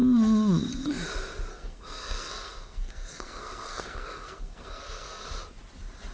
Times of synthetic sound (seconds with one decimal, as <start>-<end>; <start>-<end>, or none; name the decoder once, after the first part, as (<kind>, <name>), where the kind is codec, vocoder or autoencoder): 1.5-5.2 (codec, SNAC)